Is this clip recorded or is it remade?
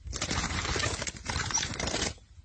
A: recorded